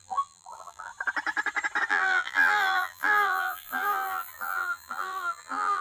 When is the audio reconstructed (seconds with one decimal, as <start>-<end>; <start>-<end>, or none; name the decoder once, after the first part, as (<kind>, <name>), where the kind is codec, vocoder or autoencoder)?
0.0-0.9 (vocoder, BigVGAN v2); 1.9-5.8